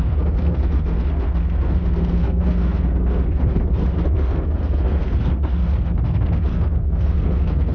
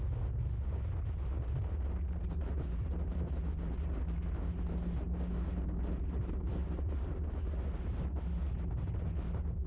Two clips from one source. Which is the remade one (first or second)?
first